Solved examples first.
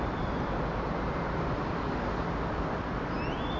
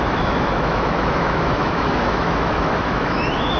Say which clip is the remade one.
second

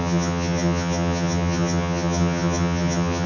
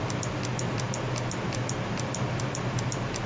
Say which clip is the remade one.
first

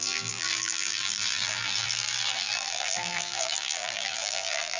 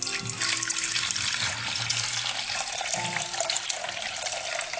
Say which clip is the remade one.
first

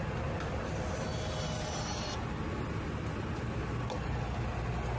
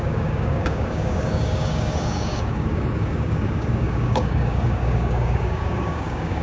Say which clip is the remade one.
second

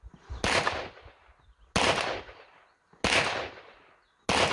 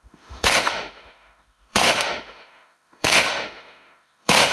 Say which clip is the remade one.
second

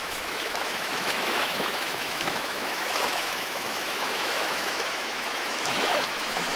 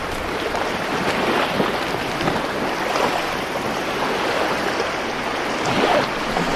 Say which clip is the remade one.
first